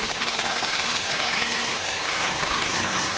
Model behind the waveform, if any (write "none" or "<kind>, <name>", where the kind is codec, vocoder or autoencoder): codec, SNAC